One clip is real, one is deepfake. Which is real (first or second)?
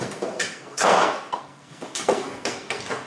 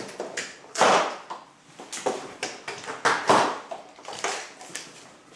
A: second